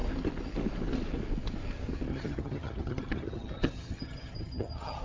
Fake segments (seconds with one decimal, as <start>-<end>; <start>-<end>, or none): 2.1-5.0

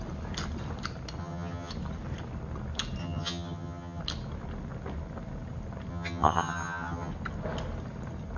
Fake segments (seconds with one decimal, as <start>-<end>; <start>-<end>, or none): 1.2-1.7; 3.0-4.0; 5.9-7.1

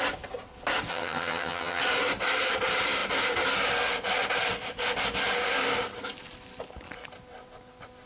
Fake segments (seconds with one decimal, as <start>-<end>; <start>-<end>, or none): 0.9-1.8